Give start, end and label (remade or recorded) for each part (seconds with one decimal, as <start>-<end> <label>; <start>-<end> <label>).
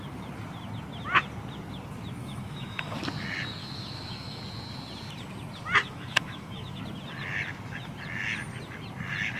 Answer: 0.0-2.2 recorded; 2.2-3.0 remade; 3.0-3.6 recorded; 3.6-4.4 remade; 4.4-5.8 recorded; 5.8-6.8 remade; 6.8-9.4 recorded